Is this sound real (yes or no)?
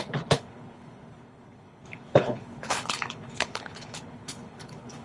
no